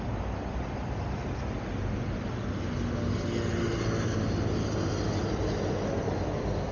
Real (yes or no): yes